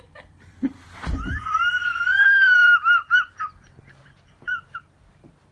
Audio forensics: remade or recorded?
remade